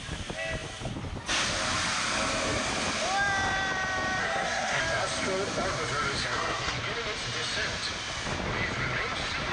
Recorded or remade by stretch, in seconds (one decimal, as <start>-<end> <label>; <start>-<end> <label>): 0.0-4.2 recorded; 4.2-4.8 remade; 4.8-6.2 recorded; 6.2-6.8 remade; 6.8-9.5 recorded